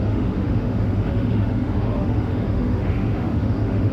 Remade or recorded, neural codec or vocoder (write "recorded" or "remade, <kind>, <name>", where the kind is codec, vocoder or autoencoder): remade, autoencoder, DAC-VAE